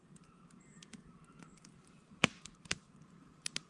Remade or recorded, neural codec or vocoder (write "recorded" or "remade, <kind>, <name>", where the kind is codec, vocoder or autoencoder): remade, vocoder, BigVGAN v2